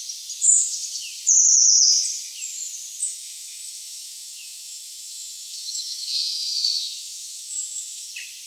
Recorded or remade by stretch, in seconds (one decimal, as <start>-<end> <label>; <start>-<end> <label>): 0.0-3.0 recorded; 3.0-8.1 remade; 8.1-8.5 recorded

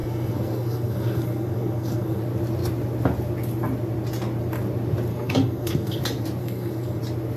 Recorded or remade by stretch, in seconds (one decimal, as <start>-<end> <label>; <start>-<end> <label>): 0.0-2.2 remade; 2.2-5.1 recorded; 5.1-6.0 remade; 6.0-6.4 recorded; 6.4-7.0 remade; 7.0-7.4 recorded